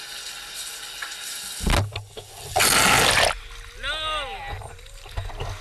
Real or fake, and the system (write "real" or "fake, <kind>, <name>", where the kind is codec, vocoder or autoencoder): real